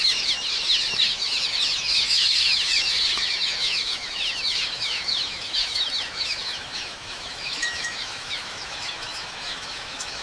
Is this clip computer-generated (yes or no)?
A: yes